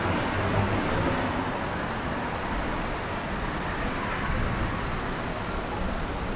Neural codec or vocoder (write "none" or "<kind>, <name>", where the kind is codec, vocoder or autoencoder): none